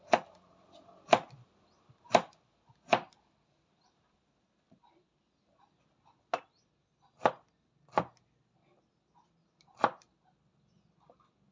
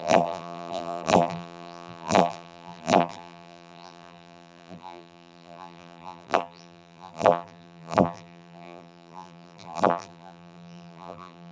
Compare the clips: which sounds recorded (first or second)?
first